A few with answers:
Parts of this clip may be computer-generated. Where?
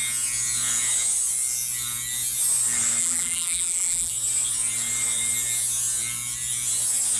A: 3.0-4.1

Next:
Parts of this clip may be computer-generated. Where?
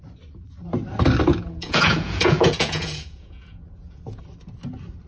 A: 1.3-4.2